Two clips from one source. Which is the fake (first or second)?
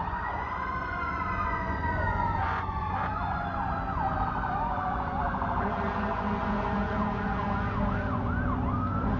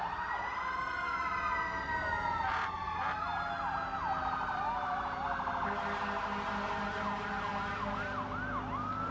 first